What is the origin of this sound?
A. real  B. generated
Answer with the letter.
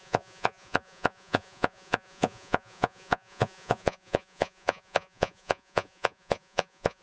B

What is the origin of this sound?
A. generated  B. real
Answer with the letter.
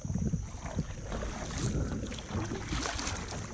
B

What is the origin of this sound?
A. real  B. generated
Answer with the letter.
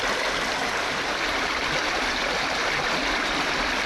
A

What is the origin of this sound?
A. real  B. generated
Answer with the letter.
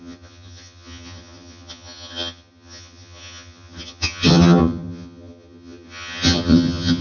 B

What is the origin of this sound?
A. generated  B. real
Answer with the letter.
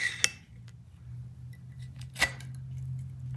B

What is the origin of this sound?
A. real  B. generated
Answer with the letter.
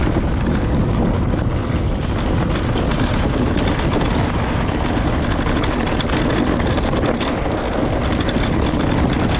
A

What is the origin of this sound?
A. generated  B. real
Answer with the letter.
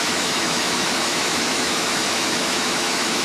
A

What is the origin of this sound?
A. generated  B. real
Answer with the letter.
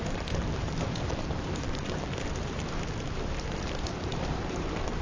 A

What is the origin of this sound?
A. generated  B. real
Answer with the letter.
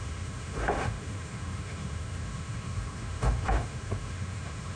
A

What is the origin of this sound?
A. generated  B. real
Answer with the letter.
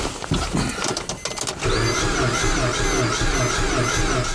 B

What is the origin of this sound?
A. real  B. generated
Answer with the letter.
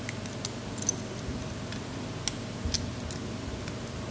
A